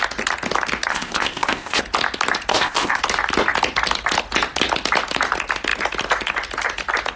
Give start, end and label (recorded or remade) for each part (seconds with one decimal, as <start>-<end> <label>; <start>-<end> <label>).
0.0-0.9 recorded; 0.9-1.8 remade; 1.8-2.5 recorded; 2.5-3.0 remade; 3.0-7.2 recorded